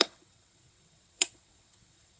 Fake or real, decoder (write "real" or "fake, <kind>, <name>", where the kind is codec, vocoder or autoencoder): fake, vocoder, WaveNeXt